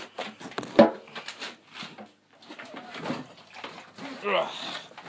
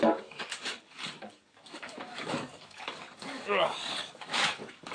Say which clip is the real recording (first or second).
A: first